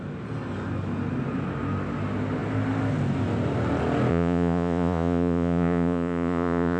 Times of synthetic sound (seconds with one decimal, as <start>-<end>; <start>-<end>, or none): 4.1-6.8